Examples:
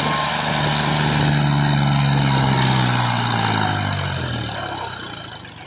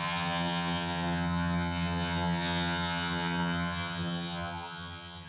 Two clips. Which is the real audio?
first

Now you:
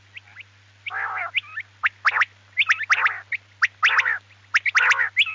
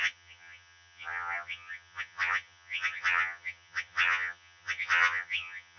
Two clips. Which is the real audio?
first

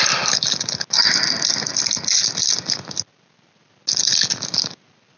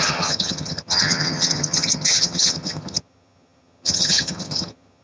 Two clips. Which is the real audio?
first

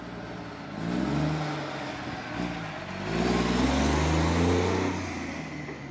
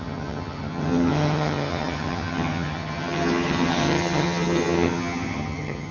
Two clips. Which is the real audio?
first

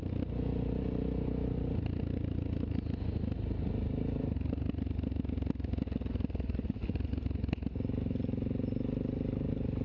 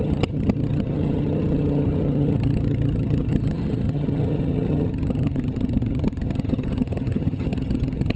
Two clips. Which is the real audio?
first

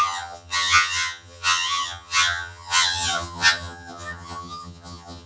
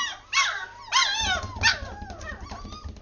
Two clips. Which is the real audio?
second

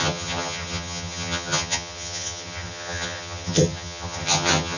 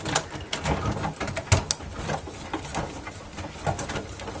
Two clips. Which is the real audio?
second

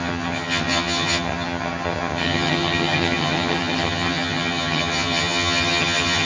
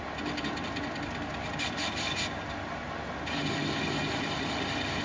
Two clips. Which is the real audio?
second